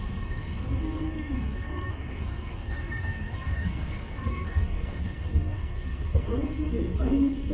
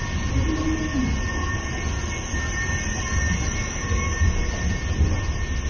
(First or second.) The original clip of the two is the second